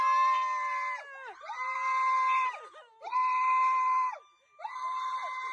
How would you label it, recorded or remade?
recorded